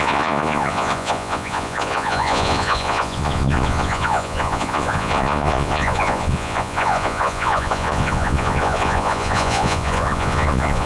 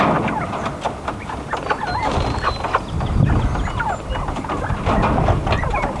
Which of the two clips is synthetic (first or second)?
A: first